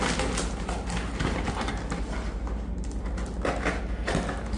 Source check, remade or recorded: recorded